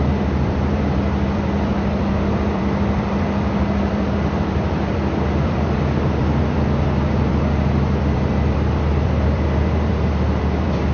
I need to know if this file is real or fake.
fake